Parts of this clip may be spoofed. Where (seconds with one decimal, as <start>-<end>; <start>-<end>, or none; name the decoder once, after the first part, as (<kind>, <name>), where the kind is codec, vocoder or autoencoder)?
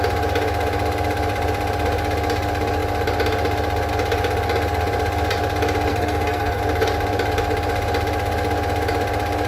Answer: 5.9-6.6 (codec, SNAC)